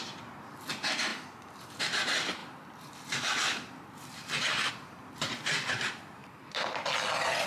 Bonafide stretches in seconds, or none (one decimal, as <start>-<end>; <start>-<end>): none

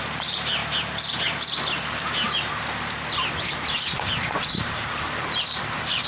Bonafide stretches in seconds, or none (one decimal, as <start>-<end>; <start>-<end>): 0.6-3.5

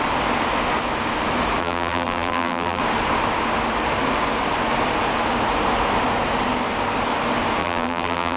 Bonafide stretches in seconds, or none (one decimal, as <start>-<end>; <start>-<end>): 0.0-1.6; 2.8-7.6

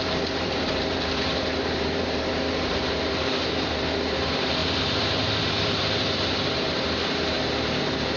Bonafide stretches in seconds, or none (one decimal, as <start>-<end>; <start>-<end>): none

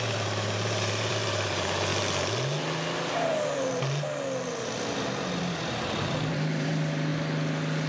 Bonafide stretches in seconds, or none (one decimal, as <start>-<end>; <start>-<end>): 1.9-5.4; 7.1-7.9

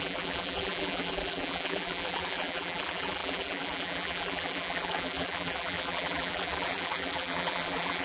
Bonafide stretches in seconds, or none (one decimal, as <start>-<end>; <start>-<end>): none

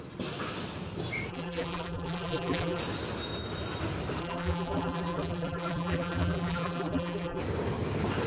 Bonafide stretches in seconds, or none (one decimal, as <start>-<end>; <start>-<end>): 0.0-1.3; 2.8-4.2; 7.4-8.3

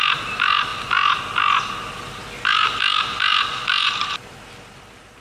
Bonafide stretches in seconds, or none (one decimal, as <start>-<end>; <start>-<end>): 0.0-0.7; 1.2-3.3; 4.3-5.2